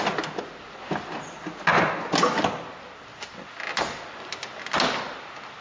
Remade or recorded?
recorded